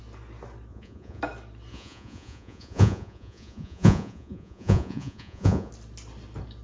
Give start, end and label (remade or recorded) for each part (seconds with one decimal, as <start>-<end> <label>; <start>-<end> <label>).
0.0-0.7 recorded; 0.7-1.2 remade; 1.2-1.7 recorded; 1.7-5.7 remade; 5.7-6.6 recorded